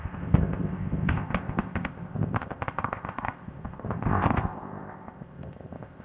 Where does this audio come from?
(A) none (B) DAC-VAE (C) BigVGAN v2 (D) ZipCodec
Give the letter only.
D